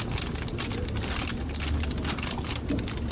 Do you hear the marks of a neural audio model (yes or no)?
no